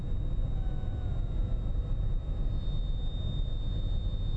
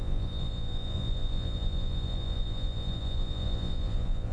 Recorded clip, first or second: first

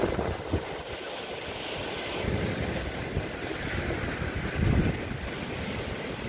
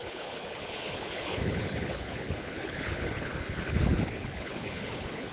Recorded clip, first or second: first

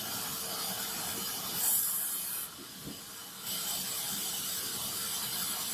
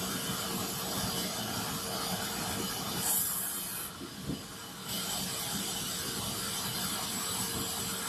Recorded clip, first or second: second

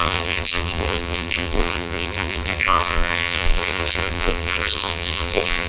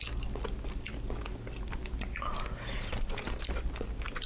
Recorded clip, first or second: second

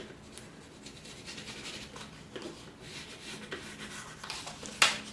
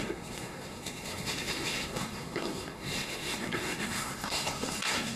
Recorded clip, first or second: first